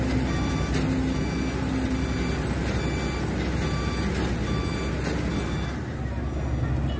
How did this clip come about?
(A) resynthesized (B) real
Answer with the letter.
B